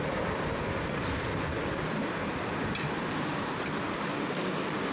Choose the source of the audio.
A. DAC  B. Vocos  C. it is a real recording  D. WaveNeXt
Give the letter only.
C